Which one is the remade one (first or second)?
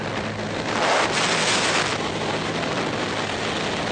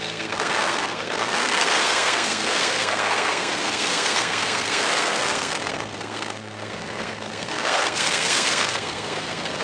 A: second